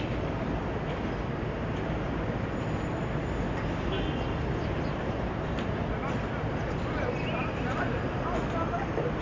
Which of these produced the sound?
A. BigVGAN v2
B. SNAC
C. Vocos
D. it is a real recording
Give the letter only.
D